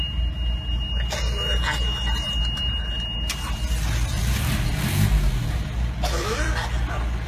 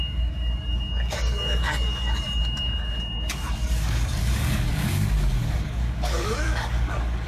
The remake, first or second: second